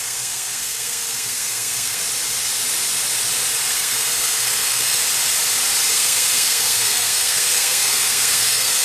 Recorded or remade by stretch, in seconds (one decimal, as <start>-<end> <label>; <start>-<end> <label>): 0.0-2.0 remade; 2.0-3.7 recorded; 3.7-5.0 remade; 5.0-5.9 recorded; 5.9-8.8 remade